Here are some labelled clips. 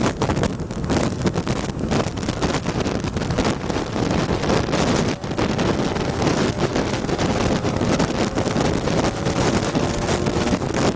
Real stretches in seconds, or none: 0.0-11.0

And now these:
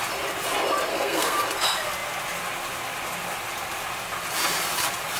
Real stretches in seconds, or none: 0.0-0.9; 1.4-5.2

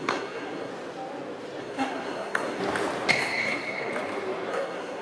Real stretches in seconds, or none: 0.7-1.6; 2.6-3.1; 3.9-4.5

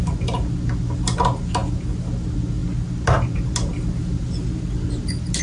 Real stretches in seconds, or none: 0.0-5.4

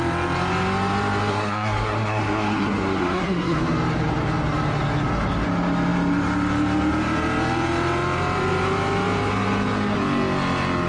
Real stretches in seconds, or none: 0.0-1.3; 3.6-10.9

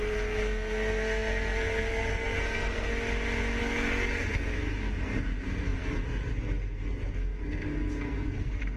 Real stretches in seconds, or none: 2.9-3.6

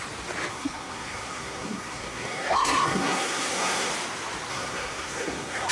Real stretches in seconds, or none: 0.0-0.5; 3.9-4.5

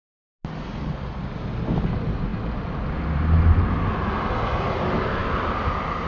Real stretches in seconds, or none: 0.0-6.1